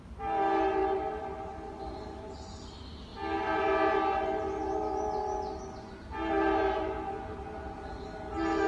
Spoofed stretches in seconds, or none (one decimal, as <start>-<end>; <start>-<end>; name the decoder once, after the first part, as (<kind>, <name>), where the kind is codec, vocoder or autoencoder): none